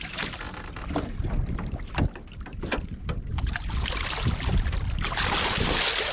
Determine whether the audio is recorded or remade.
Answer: recorded